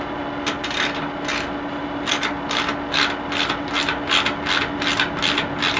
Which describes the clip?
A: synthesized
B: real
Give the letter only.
B